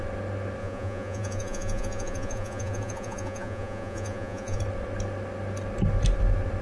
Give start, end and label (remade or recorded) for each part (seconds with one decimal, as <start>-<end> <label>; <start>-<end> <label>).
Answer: 0.0-0.6 recorded; 0.6-4.6 remade; 4.6-6.6 recorded